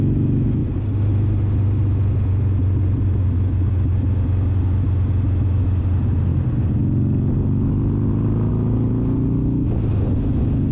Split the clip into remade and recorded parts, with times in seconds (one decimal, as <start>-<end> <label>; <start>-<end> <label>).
0.0-10.7 recorded